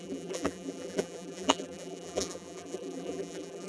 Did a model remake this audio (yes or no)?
yes